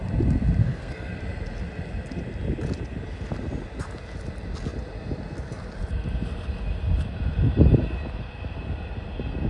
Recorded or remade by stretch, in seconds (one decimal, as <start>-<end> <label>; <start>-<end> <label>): 0.0-0.6 recorded; 0.6-1.2 remade; 1.2-9.5 recorded